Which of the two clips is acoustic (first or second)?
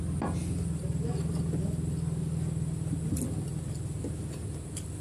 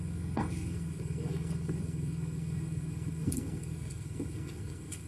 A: first